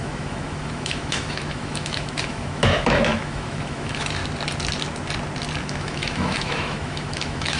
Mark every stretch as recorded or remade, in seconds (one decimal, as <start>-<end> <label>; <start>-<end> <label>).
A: 0.0-4.2 remade; 4.2-5.6 recorded; 5.6-7.6 remade